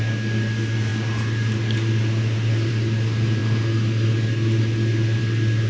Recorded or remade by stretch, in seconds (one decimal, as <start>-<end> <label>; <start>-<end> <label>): 0.0-5.7 recorded